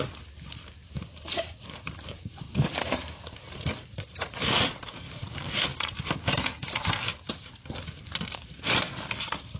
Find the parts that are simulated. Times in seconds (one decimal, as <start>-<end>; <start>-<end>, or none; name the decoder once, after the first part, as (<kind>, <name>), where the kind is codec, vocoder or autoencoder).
0.8-4.4 (vocoder, BigVGAN v2); 5.7-7.8